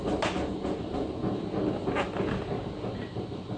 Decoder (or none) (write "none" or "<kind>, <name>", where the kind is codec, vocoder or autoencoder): none